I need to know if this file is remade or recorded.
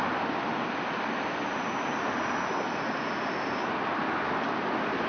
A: recorded